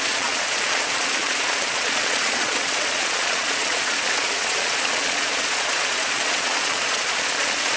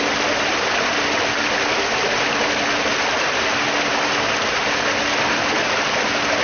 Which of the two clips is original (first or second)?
second